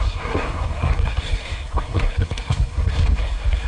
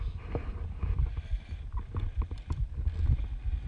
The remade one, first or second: first